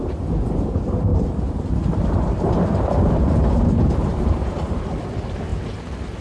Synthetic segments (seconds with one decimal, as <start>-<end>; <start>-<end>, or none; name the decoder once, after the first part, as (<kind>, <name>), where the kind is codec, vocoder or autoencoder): 1.1-4.8 (vocoder, BigVGAN v2)